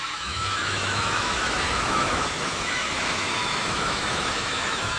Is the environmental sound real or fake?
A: fake